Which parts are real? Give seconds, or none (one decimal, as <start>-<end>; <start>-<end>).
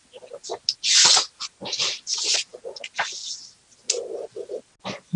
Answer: 0.0-5.2